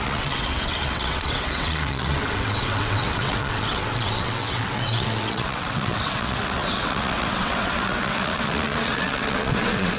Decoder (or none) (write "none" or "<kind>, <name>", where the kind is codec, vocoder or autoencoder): vocoder, WaveNeXt